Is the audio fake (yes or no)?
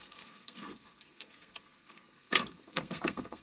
yes